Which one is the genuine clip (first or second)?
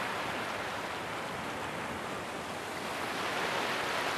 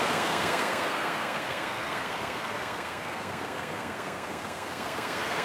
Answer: first